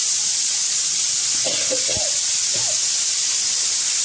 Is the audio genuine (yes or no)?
yes